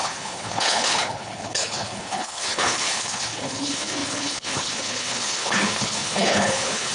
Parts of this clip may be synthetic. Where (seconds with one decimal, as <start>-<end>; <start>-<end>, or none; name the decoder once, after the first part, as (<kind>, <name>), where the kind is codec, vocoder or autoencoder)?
0.0-6.9 (codec, HILCodec)